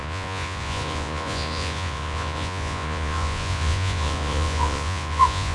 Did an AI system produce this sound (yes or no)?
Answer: yes